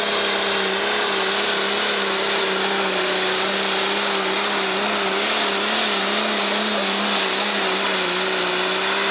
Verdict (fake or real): real